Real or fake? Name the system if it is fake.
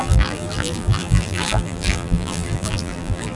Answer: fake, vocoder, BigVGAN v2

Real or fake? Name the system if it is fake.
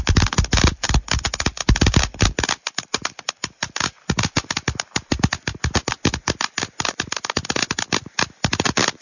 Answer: real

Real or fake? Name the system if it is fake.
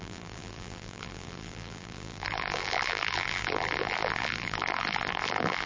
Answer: fake, vocoder, BigVGAN v2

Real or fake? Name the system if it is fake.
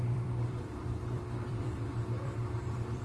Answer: fake, vocoder, BigVGAN v2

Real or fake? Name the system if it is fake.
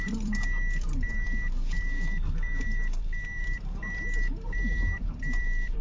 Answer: fake, vocoder, BigVGAN v2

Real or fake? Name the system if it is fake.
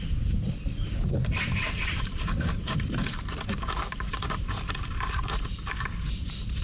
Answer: fake, vocoder, BigVGAN v2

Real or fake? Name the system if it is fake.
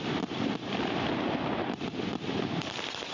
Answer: fake, vocoder, BigVGAN v2